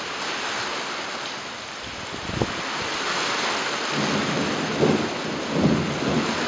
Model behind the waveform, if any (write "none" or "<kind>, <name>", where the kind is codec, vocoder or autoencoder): none